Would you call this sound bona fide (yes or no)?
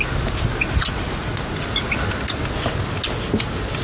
yes